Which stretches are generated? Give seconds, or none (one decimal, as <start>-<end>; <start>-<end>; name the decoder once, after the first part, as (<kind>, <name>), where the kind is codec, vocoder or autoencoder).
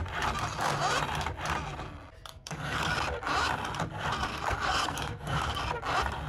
2.3-2.9 (codec, SNAC); 4.3-5.6